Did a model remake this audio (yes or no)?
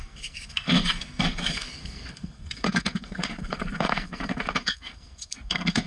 yes